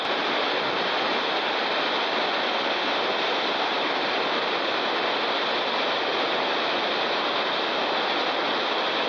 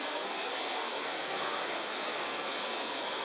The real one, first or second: first